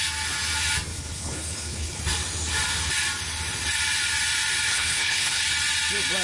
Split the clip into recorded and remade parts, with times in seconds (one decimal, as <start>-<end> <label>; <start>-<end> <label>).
0.0-0.9 recorded; 0.9-2.0 remade; 2.0-4.7 recorded; 4.7-5.4 remade; 5.4-6.2 recorded